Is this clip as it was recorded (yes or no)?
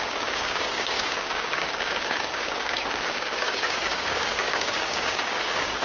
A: no